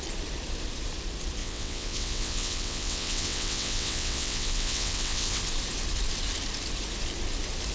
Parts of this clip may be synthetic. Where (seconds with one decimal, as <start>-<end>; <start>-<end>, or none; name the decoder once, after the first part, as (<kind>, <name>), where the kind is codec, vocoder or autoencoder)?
1.4-5.4 (vocoder, WaveNeXt)